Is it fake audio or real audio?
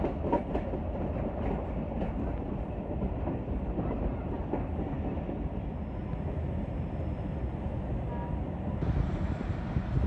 real